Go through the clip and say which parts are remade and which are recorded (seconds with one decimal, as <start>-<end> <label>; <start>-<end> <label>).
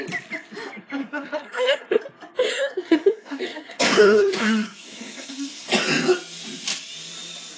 0.0-1.0 recorded; 1.0-2.0 remade; 2.0-2.5 recorded; 2.5-5.7 remade; 5.7-7.6 recorded